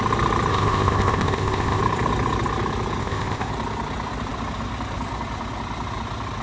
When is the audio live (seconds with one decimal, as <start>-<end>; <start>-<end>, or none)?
0.0-0.5; 1.8-3.0; 3.5-6.4